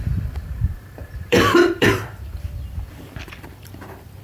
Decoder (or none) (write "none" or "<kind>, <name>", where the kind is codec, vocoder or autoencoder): vocoder, BigVGAN v2